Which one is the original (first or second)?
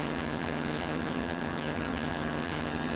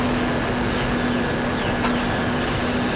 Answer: second